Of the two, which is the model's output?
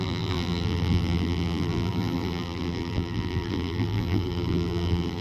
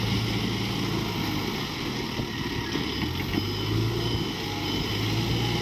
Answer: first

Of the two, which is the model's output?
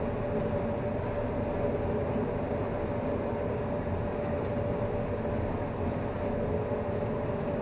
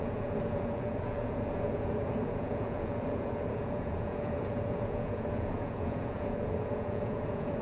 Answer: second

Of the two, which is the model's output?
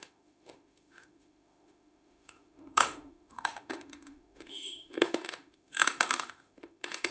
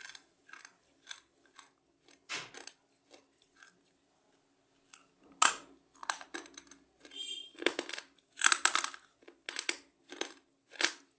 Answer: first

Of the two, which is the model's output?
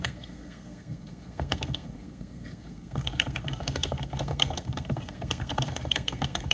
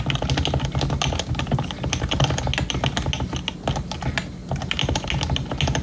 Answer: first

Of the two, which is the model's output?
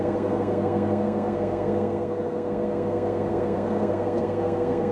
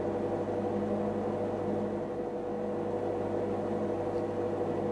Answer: first